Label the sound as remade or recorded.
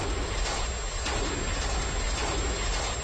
recorded